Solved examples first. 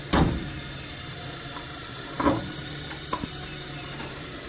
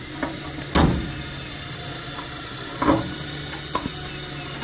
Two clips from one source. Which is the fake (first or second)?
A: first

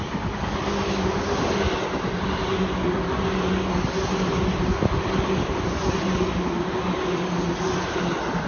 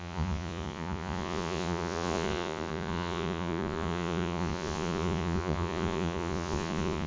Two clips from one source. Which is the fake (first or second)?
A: second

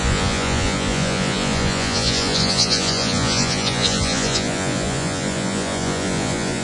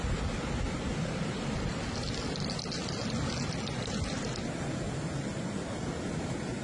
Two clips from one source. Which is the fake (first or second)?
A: first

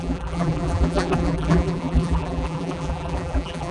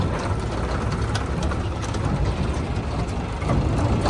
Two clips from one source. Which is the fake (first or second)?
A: first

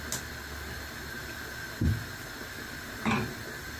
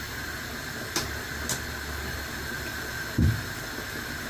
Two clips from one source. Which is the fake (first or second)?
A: second